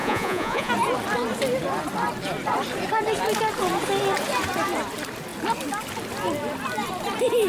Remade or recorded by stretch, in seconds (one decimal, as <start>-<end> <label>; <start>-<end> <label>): 0.0-0.7 remade; 0.7-7.5 recorded